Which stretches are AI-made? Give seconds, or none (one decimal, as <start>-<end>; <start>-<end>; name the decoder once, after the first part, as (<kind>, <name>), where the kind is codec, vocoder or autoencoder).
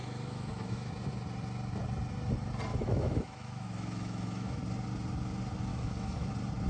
0.0-0.9 (autoencoder, DAC-VAE); 2.7-4.6; 5.7-6.3